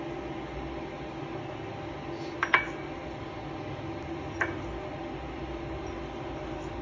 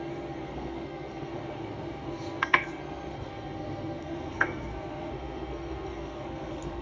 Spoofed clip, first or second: second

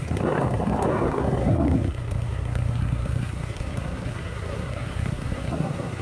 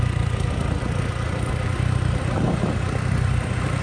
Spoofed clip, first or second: first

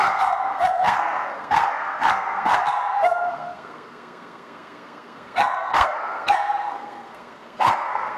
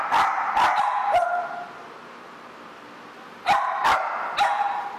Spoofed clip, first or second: first